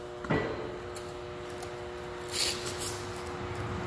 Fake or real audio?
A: real